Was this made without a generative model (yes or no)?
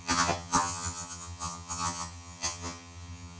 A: no